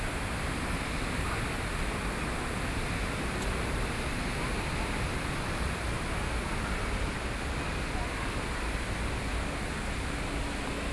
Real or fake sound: real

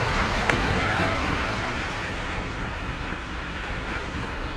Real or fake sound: fake